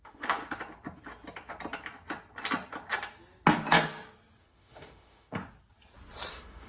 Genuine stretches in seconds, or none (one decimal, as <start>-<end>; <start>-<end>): 0.4-4.4; 5.4-6.3